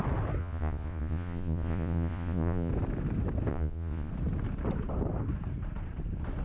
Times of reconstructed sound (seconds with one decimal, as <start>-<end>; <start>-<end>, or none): 0.4-2.7; 3.5-4.1

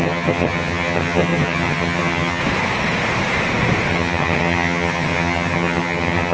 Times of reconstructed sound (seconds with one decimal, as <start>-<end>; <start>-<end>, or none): 0.0-2.4; 3.9-6.3